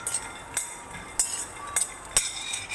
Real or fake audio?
real